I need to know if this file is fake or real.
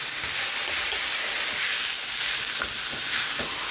fake